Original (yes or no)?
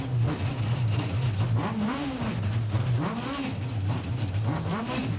yes